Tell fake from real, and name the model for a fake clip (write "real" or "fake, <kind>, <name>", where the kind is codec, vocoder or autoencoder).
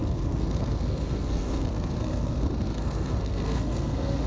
fake, codec, SNAC